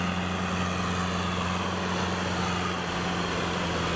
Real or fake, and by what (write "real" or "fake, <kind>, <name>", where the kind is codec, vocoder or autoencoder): real